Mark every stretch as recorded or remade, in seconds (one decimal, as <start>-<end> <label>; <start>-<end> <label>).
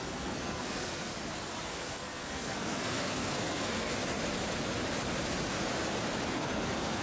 0.0-1.1 remade; 1.1-1.7 recorded; 1.7-3.9 remade; 3.9-6.4 recorded; 6.4-7.0 remade